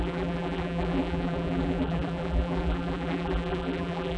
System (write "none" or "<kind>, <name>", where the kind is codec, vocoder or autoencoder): vocoder, BigVGAN v2